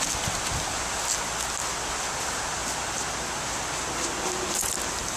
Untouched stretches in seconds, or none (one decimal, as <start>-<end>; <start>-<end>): 0.0-5.2